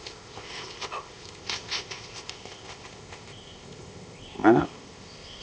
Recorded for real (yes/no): no